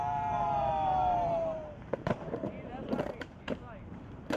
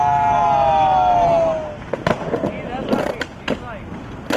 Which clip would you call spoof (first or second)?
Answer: first